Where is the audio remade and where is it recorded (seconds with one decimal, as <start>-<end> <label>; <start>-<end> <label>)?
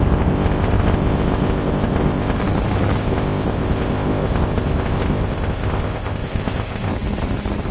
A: 0.0-2.4 remade; 2.4-3.0 recorded; 3.0-6.9 remade; 6.9-7.7 recorded